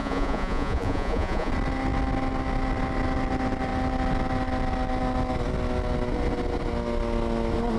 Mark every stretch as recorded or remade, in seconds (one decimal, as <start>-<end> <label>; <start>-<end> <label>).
0.0-1.5 remade; 1.5-7.8 recorded